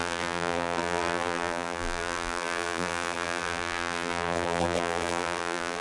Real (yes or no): no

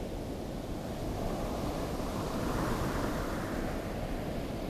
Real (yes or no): yes